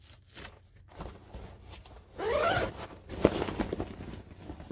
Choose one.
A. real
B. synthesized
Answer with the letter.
A